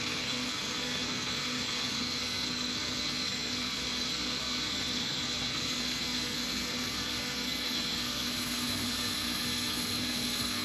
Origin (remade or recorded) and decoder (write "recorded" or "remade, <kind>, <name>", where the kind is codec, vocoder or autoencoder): remade, codec, SNAC